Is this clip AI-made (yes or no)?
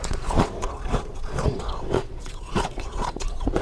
yes